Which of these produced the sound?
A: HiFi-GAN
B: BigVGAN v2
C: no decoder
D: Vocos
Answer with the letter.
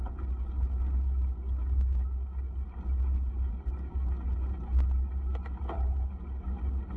C